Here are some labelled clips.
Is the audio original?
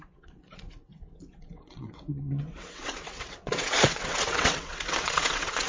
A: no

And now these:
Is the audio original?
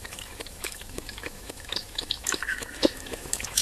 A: no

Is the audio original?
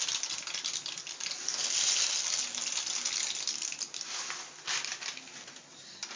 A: yes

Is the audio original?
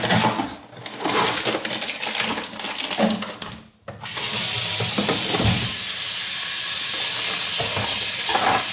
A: yes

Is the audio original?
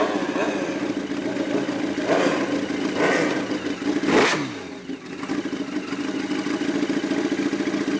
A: yes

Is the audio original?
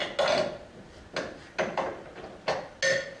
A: yes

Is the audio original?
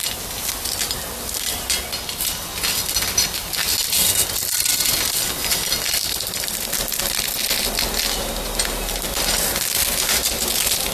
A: yes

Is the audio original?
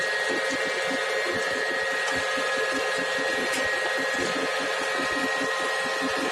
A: yes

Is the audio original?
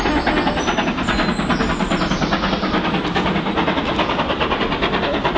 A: yes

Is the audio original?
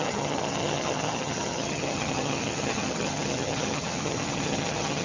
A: no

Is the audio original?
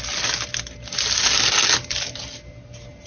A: yes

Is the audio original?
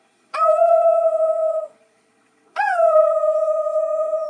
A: no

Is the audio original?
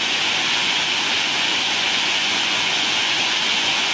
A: no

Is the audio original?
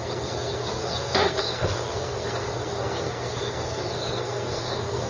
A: no